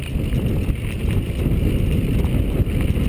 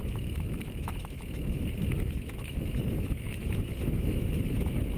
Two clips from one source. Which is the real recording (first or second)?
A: first